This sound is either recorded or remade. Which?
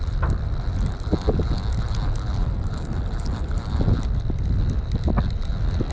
recorded